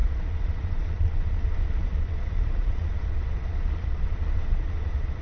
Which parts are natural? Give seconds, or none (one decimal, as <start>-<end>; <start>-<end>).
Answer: none